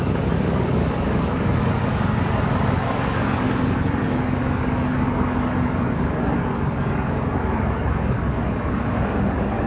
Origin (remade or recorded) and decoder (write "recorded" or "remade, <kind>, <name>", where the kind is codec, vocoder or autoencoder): remade, codec, DAC